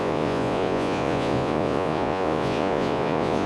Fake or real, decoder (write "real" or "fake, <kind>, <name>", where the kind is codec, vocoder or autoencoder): fake, vocoder, Vocos